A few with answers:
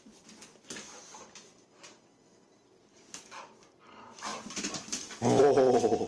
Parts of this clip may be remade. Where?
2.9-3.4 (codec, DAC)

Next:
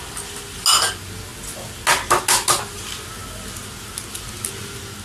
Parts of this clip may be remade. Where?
none

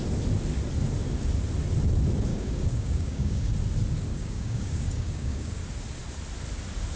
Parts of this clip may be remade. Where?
2.3-3.5 (codec, DAC); 4.1-5.6

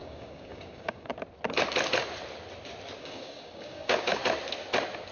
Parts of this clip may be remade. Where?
0.0-1.1 (codec, DAC); 3.0-4.2

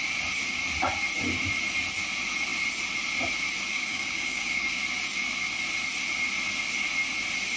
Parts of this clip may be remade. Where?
3.7-4.8 (codec, DAC)